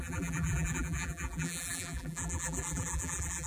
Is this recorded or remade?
remade